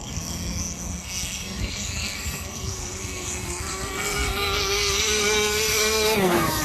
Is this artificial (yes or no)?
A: yes